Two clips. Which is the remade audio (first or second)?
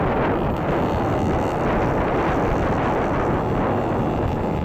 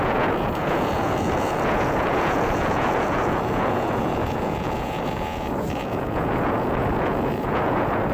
second